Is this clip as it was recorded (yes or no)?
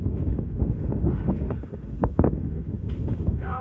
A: no